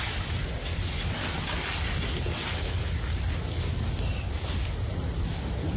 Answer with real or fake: real